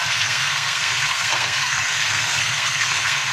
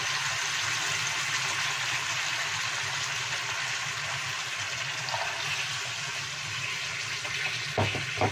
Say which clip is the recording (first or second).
second